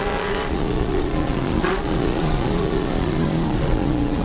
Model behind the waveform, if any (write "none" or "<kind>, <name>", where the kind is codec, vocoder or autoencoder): vocoder, Vocos